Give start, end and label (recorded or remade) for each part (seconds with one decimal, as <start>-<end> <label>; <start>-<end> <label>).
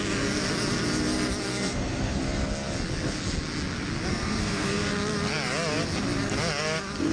0.0-1.4 recorded; 1.4-2.2 remade; 2.2-4.1 recorded; 4.1-4.9 remade; 4.9-7.1 recorded